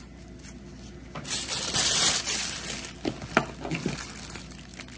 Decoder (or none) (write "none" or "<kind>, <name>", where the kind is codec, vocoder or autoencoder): none